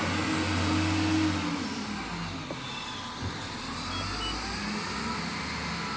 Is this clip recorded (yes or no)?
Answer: yes